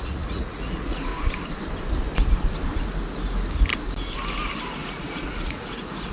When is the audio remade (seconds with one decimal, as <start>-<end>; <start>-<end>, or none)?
0.0-1.1; 4.8-6.1